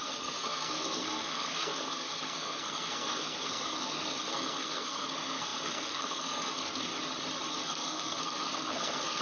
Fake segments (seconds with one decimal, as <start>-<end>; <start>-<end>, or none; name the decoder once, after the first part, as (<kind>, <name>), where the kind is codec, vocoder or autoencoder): 0.0-6.9 (codec, SNAC); 7.5-9.2

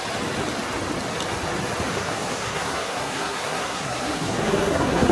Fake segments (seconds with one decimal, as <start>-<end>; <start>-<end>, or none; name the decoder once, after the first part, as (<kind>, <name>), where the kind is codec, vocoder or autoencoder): 1.9-5.1 (codec, SNAC)

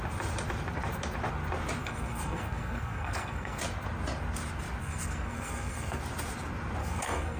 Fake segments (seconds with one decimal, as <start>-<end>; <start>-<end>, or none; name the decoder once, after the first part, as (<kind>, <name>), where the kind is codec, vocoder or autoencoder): 1.8-3.6 (codec, SNAC); 4.8-6.0; 6.8-7.4

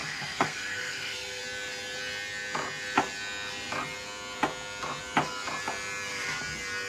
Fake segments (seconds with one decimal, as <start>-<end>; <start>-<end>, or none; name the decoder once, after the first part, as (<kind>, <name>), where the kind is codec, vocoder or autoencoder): 0.0-1.4 (codec, SNAC)

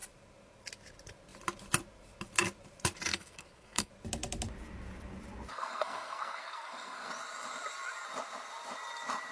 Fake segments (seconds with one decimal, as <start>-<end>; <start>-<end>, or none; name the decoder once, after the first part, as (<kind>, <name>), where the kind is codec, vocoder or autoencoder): 3.1-3.9 (codec, SNAC); 5.5-7.1